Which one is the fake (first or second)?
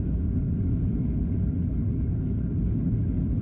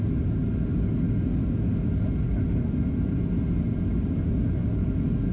first